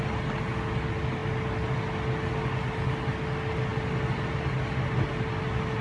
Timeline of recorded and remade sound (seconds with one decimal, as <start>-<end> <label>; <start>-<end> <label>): 0.0-5.8 recorded